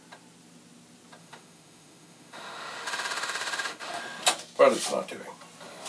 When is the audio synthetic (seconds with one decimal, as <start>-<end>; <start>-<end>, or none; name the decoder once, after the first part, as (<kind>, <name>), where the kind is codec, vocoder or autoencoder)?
1.2-4.0 (autoencoder, DAC-VAE)